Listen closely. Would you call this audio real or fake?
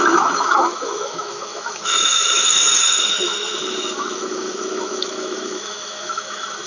fake